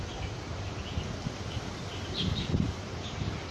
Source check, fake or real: real